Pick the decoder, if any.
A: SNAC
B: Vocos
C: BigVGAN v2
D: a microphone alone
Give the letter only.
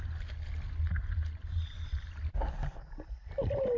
D